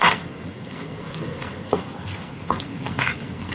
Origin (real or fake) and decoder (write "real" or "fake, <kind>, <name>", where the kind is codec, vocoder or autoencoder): fake, codec, SNAC